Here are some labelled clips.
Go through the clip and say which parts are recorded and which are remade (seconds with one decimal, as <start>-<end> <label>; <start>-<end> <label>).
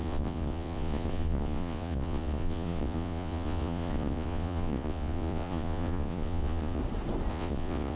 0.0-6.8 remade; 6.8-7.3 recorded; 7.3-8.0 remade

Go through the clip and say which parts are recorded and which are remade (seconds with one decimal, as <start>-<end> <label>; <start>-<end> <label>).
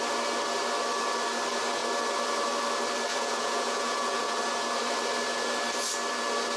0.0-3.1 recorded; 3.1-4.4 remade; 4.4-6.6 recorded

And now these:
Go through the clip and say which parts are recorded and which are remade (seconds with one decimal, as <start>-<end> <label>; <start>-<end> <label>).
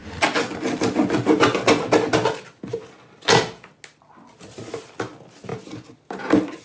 0.0-6.6 recorded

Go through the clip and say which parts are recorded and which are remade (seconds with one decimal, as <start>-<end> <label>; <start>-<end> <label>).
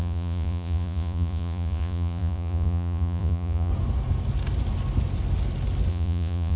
0.0-3.7 remade; 3.7-5.9 recorded; 5.9-6.6 remade